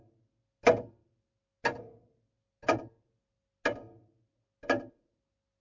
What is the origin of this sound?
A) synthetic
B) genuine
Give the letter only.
B